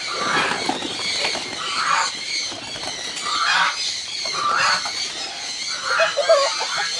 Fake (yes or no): yes